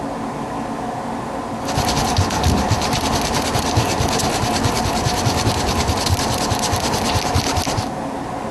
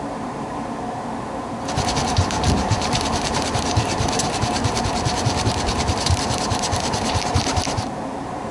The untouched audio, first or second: first